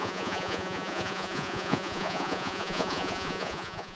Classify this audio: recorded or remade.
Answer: remade